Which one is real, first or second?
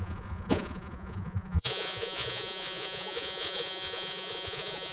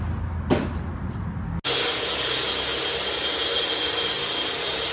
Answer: second